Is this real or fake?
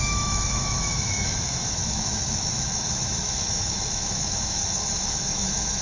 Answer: fake